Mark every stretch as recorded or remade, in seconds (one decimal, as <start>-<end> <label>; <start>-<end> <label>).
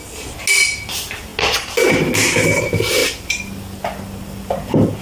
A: 0.0-5.0 recorded